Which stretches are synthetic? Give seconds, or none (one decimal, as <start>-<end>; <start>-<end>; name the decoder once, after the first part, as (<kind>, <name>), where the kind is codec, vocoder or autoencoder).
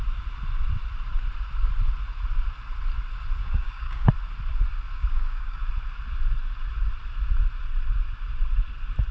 3.4-4.1 (codec, DAC); 4.9-5.7